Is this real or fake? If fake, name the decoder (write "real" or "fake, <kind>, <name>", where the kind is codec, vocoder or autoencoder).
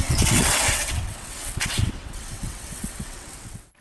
fake, vocoder, WaveNeXt